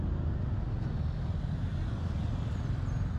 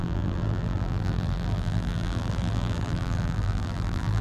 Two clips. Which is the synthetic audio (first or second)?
second